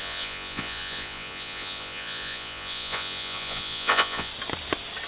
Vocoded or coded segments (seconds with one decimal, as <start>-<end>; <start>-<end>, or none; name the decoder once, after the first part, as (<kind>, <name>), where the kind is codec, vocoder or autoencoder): 0.0-4.3 (vocoder, Vocos)